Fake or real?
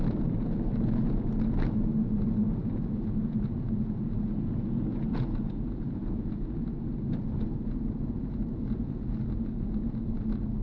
fake